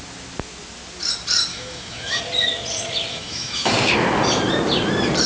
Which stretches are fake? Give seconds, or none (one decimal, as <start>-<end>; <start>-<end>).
1.5-2.2; 3.1-3.7